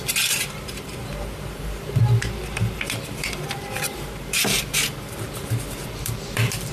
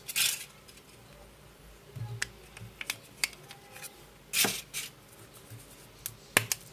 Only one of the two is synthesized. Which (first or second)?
first